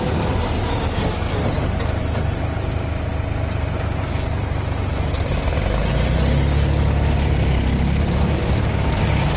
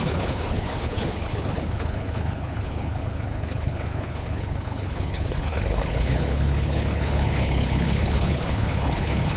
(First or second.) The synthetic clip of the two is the second